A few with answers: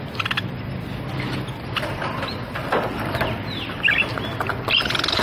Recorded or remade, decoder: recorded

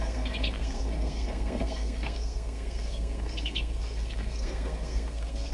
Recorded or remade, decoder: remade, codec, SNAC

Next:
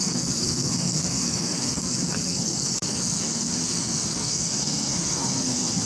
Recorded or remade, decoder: remade, codec, SNAC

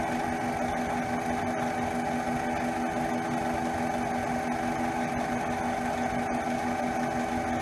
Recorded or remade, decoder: recorded